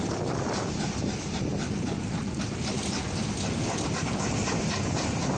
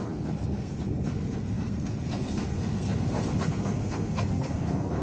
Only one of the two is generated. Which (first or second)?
second